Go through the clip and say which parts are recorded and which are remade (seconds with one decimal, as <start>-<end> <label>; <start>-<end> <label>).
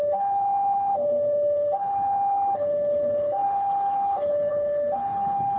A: 0.0-5.6 remade